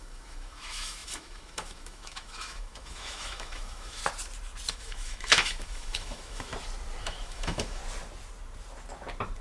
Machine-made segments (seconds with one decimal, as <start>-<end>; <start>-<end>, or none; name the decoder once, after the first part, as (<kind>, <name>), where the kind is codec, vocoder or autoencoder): 0.0-4.0 (autoencoder, DAC-VAE); 4.7-6.5; 7.0-7.8